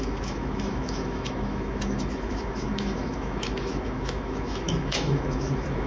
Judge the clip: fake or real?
fake